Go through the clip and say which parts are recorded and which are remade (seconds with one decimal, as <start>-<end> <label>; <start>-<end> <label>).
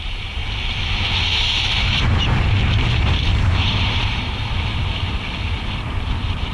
0.0-0.4 remade; 0.4-1.5 recorded; 1.5-4.4 remade; 4.4-5.9 recorded; 5.9-6.5 remade